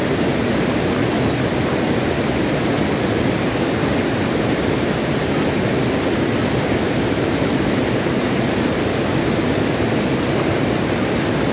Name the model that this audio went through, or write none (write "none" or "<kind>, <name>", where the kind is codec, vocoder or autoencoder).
none